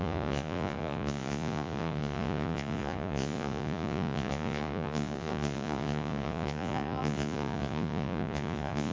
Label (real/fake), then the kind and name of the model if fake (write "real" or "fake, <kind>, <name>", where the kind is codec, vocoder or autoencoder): fake, vocoder, Vocos